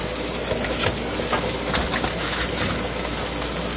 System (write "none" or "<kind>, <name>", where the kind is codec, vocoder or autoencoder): none